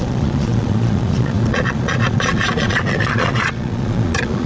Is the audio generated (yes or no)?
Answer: yes